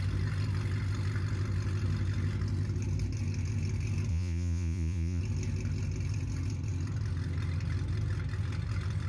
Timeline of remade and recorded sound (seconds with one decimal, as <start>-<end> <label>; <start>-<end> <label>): 0.0-4.1 recorded; 4.1-5.2 remade; 5.2-9.1 recorded